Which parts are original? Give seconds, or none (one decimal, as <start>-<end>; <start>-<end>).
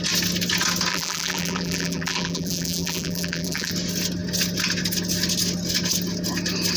0.0-0.9; 3.7-6.8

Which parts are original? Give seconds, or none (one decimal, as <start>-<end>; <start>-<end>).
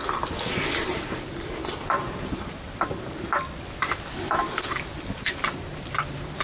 none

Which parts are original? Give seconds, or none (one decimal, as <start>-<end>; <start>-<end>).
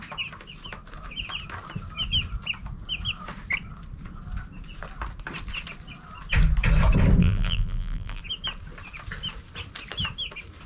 0.0-7.2; 8.2-10.7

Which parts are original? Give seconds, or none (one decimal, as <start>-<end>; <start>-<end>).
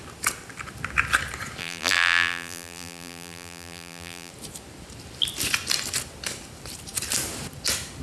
0.0-1.6; 4.3-8.0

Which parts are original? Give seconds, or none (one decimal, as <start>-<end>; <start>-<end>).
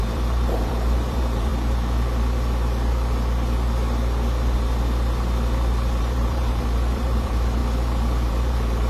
1.5-6.0; 7.6-8.3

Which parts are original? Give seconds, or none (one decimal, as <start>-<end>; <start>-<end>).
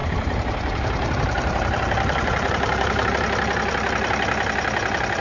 3.1-5.2